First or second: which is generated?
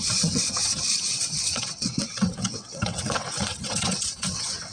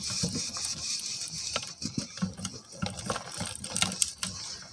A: first